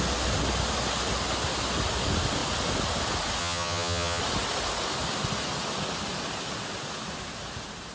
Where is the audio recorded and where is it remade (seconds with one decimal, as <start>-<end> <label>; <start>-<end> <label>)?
0.0-3.4 recorded; 3.4-4.2 remade; 4.2-7.9 recorded